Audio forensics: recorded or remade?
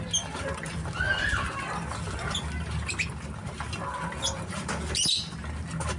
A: recorded